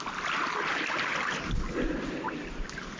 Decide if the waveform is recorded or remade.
recorded